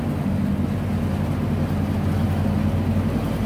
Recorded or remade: recorded